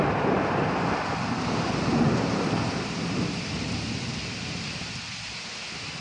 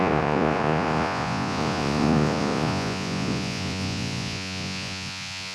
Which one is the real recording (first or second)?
first